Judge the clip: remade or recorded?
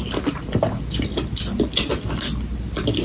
recorded